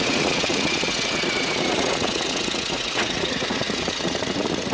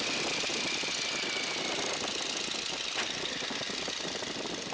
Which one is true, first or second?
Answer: second